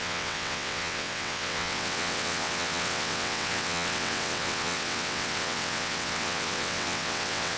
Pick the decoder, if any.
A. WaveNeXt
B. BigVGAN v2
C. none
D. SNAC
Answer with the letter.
A